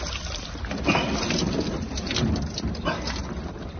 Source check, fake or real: real